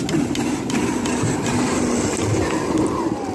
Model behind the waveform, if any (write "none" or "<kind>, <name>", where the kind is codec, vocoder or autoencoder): none